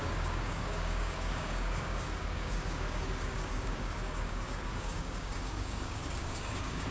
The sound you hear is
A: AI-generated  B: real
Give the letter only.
A